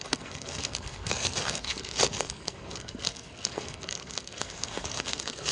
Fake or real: fake